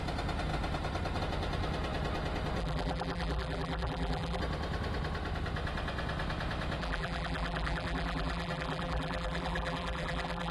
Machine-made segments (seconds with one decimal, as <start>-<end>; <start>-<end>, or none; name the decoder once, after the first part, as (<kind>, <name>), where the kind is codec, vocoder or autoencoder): 2.6-4.4 (vocoder, BigVGAN v2); 6.8-10.5